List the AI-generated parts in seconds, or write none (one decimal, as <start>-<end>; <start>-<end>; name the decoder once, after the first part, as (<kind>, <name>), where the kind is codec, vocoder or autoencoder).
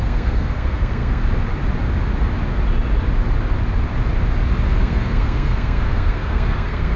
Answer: 0.0-1.2 (codec, SNAC); 4.8-7.0